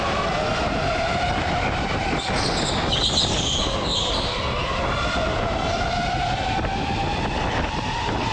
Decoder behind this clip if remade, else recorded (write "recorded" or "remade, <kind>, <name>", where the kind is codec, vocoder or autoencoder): recorded